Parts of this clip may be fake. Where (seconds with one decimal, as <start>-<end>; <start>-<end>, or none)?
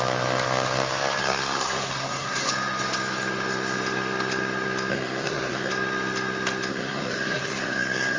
1.2-2.5; 4.9-5.7; 6.7-8.2